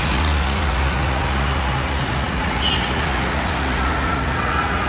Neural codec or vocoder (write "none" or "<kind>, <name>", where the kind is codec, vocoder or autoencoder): vocoder, Vocos